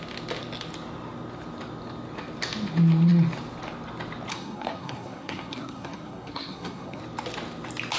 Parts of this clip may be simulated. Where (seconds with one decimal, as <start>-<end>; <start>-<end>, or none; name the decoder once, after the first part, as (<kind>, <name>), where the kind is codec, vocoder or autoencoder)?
4.3-7.0 (codec, SNAC)